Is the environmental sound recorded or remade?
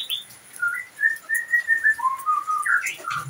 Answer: recorded